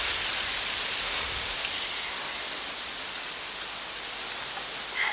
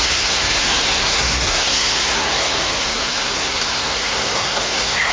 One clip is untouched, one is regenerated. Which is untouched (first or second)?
first